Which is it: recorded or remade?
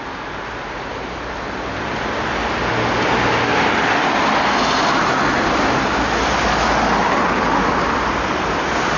recorded